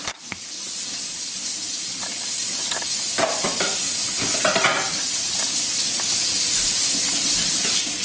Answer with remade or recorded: remade